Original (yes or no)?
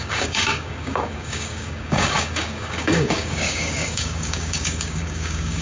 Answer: no